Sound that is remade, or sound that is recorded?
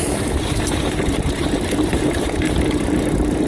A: remade